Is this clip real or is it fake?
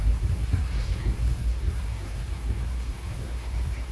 fake